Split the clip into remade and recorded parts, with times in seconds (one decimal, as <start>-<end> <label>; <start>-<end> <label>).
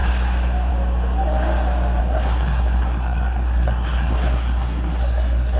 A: 0.0-2.0 recorded; 2.0-5.6 remade